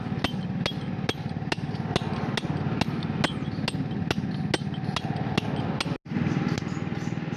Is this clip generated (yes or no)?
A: no